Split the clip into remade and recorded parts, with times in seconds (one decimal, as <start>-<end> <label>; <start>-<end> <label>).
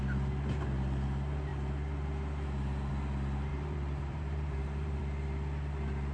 0.0-3.5 recorded; 3.5-5.0 remade; 5.0-6.1 recorded